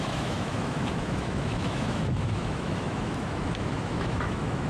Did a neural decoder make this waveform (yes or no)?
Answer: yes